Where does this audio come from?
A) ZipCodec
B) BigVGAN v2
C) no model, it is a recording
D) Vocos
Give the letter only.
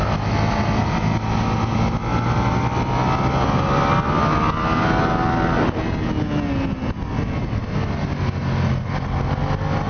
C